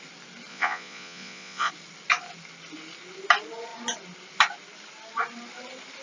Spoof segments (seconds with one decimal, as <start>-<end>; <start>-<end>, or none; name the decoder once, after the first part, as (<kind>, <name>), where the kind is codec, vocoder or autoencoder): 0.5-1.7 (vocoder, Vocos)